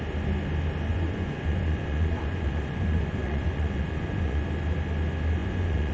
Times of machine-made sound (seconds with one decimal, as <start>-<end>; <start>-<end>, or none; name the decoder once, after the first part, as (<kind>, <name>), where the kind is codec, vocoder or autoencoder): 0.9-4.4 (vocoder, Vocos); 5.4-5.9